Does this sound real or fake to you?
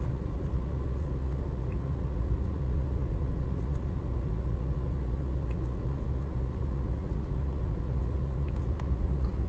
fake